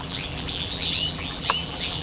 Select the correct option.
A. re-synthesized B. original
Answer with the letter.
A